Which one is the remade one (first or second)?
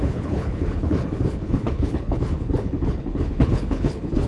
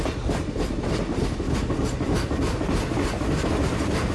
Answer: first